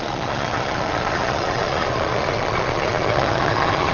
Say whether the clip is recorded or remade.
remade